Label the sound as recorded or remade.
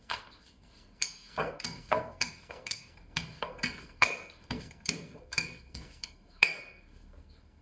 remade